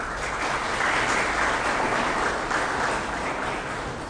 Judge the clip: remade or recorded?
recorded